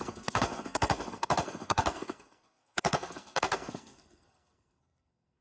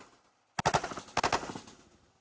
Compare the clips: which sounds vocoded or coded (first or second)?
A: first